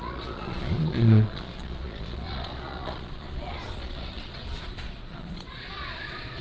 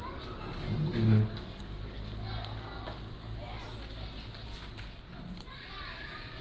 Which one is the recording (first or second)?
second